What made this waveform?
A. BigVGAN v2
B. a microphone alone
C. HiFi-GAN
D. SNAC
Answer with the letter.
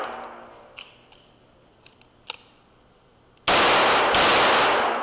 B